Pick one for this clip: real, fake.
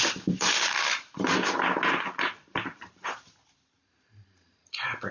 fake